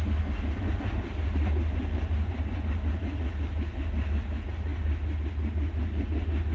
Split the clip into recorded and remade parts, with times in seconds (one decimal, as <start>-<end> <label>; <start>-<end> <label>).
0.0-6.5 recorded